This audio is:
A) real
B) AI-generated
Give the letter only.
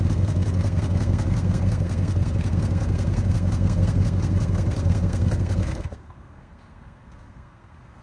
B